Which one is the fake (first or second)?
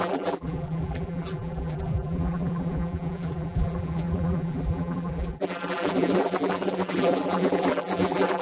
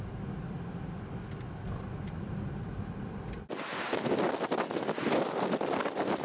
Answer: first